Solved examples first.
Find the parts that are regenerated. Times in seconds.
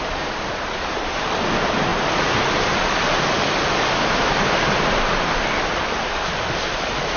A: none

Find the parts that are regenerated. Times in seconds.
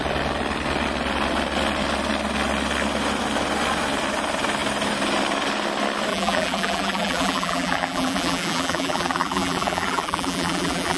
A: 6.1-11.0 (vocoder, BigVGAN v2)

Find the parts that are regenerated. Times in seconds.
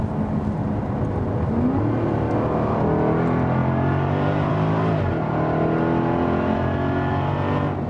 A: 3.6-4.5 (vocoder, BigVGAN v2)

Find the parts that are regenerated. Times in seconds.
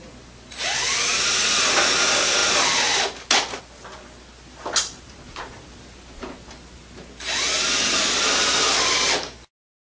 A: none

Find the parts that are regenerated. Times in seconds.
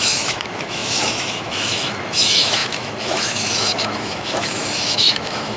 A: 0.0-5.6 (autoencoder, DAC-VAE)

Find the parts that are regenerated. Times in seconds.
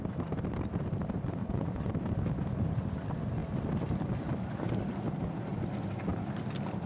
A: 1.4-1.9 (vocoder, Vocos)